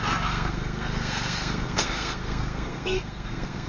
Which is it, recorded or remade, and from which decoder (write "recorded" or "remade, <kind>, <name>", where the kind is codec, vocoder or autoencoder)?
remade, codec, SNAC